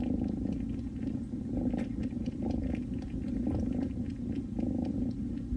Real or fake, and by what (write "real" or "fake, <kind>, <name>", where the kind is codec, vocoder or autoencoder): fake, vocoder, BigVGAN v2